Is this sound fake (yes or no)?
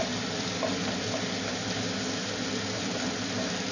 no